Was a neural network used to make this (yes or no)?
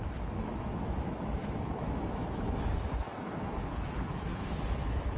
yes